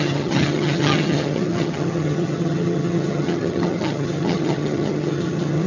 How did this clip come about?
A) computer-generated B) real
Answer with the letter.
A